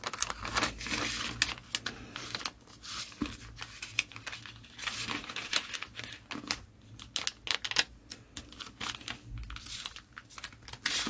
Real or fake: real